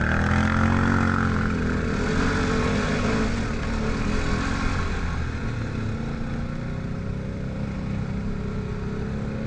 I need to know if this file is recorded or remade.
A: recorded